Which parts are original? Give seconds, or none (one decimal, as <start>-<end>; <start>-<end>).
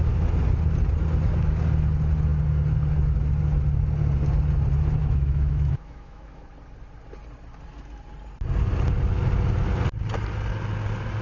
0.0-5.0; 6.5-11.2